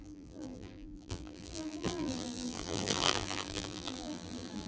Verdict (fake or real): fake